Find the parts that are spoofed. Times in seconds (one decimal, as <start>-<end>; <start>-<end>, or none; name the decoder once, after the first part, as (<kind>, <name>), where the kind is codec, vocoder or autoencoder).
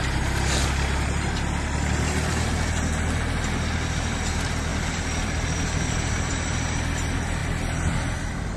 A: 4.7-6.1 (vocoder, BigVGAN v2)